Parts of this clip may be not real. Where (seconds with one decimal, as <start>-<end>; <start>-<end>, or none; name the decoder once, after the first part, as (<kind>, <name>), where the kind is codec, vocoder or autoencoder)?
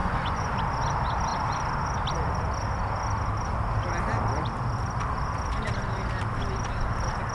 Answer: 0.0-0.6 (vocoder, Vocos)